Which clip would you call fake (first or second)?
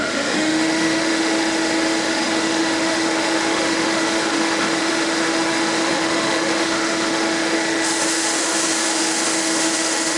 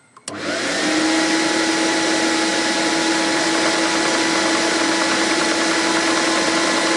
first